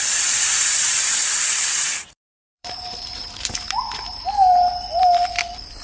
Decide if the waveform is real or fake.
fake